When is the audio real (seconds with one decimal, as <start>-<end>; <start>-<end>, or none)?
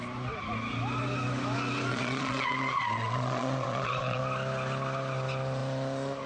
0.0-1.9; 4.2-6.3